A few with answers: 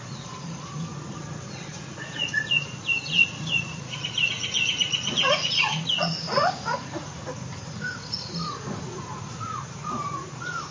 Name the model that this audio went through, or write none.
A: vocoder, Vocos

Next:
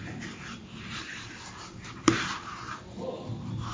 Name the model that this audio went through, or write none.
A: none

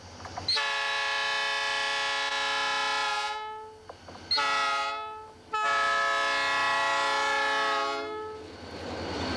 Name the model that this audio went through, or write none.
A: none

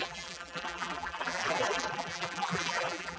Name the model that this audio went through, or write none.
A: vocoder, BigVGAN v2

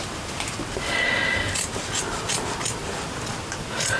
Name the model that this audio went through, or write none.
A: none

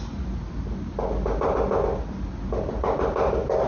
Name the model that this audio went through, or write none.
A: none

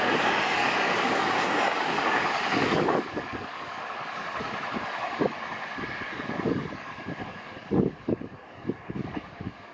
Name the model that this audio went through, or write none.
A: codec, DAC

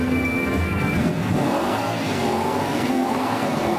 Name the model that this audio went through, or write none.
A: codec, SNAC